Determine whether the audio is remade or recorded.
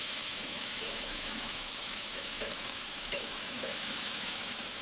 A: remade